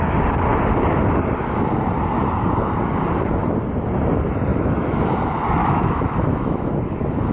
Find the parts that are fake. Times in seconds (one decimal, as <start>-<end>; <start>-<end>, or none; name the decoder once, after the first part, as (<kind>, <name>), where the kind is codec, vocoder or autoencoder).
4.5-5.1 (autoencoder, DAC-VAE); 5.6-6.8